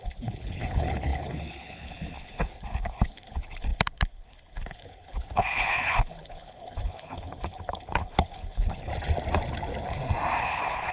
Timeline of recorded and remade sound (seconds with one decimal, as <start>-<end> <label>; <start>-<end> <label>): 0.0-8.9 remade; 8.9-10.4 recorded; 10.4-10.9 remade